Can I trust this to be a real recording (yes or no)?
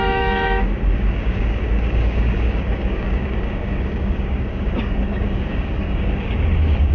no